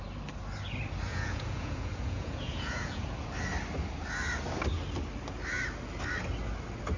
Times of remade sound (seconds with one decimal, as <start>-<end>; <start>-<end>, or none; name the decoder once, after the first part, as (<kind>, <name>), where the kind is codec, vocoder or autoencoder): 1.1-3.0 (vocoder, Vocos)